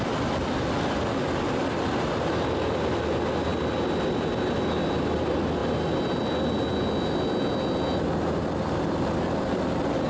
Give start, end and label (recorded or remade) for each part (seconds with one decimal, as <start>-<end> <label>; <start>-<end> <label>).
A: 0.0-10.1 recorded